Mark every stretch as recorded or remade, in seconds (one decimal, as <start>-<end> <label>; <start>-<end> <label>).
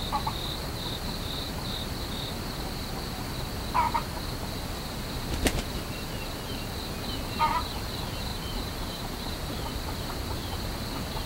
0.0-8.3 recorded; 8.3-9.5 remade; 9.5-11.3 recorded